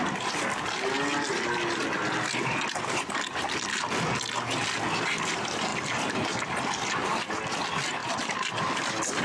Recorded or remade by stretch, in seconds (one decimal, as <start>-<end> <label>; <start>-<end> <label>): 0.0-9.2 recorded